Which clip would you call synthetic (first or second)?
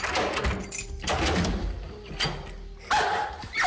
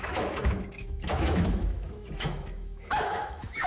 second